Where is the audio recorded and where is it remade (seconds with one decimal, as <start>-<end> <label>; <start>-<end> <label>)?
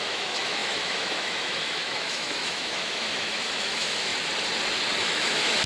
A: 0.0-4.1 remade; 4.1-5.0 recorded; 5.0-5.7 remade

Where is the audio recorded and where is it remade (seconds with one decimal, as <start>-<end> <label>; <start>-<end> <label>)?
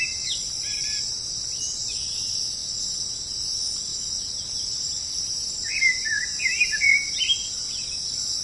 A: 0.0-3.9 recorded; 3.9-7.2 remade; 7.2-8.4 recorded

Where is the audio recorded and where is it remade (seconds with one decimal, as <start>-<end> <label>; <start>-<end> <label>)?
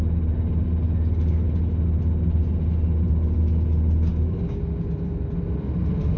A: 0.0-4.1 recorded; 4.1-4.6 remade; 4.6-6.2 recorded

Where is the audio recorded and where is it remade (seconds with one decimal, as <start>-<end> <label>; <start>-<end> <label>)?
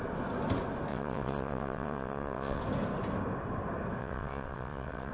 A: 0.0-0.9 recorded; 0.9-2.6 remade; 2.6-4.0 recorded; 4.0-5.1 remade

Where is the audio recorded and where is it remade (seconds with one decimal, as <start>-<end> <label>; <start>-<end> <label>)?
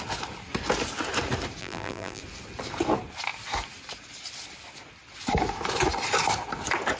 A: 0.0-1.6 recorded; 1.6-2.2 remade; 2.2-7.0 recorded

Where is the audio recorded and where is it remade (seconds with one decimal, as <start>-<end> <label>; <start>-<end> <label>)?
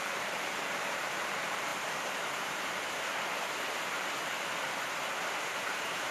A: 0.0-1.7 remade; 1.7-5.4 recorded; 5.4-6.1 remade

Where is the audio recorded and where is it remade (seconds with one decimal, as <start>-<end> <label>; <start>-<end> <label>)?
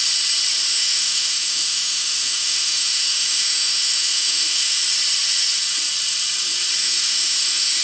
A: 0.0-0.7 recorded; 0.7-4.8 remade; 4.8-6.8 recorded; 6.8-7.8 remade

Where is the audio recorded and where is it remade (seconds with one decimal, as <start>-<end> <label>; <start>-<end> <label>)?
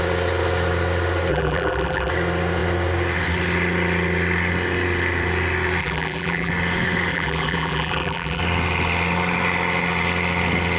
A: 0.0-1.3 recorded; 1.3-2.1 remade; 2.1-5.8 recorded; 5.8-6.5 remade; 6.5-7.1 recorded; 7.1-8.4 remade; 8.4-10.8 recorded